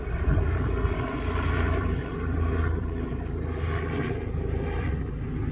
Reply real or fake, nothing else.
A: fake